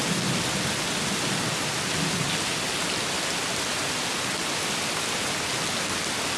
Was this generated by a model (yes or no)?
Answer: no